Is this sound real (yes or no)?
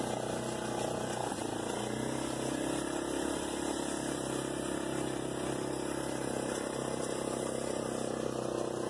yes